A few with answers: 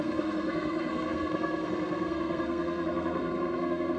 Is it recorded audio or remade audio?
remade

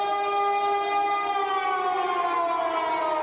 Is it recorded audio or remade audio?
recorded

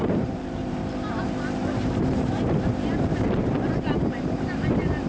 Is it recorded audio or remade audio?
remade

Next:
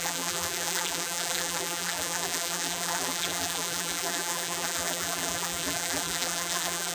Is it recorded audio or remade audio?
remade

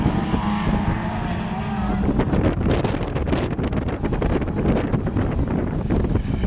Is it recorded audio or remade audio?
recorded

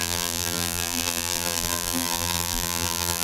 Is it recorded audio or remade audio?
remade